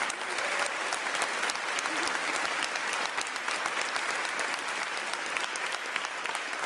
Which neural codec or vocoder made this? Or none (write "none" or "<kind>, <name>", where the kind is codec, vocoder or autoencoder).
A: none